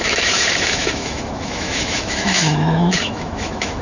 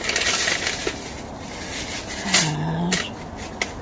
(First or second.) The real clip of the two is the second